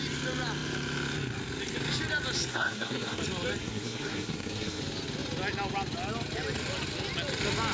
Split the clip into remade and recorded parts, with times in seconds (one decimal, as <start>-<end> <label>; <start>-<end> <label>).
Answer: 0.0-2.5 recorded; 2.5-3.2 remade; 3.2-3.6 recorded; 3.6-4.8 remade; 4.8-7.7 recorded